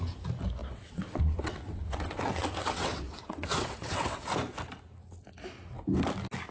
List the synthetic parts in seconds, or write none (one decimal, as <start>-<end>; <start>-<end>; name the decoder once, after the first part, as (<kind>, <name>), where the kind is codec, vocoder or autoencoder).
0.6-4.3 (vocoder, WaveNeXt)